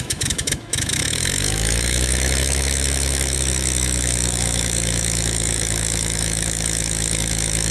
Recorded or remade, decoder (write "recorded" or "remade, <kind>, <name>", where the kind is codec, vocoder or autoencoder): remade, autoencoder, DAC-VAE